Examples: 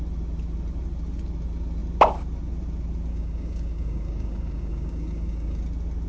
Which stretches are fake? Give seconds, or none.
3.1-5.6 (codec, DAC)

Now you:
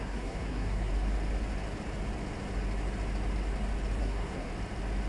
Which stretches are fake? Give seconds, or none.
0.0-0.9 (codec, SNAC); 4.0-4.5

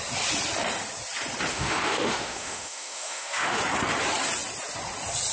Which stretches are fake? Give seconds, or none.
1.5-3.6 (autoencoder, DAC-VAE)

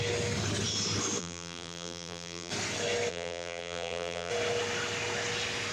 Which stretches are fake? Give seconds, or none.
1.2-2.5 (vocoder, BigVGAN v2); 3.1-4.3

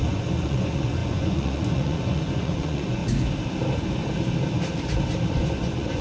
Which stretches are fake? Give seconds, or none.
0.0-3.0 (vocoder, Vocos); 5.3-6.0

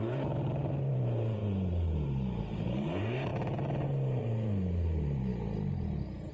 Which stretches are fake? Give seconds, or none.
0.0-3.3 (vocoder, BigVGAN v2); 4.2-5.3

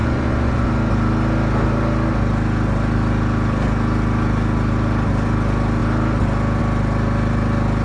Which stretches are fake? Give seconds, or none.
0.0-0.7 (vocoder, Vocos)

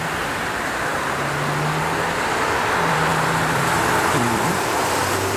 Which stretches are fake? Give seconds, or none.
0.0-0.9 (vocoder, BigVGAN v2); 2.2-5.4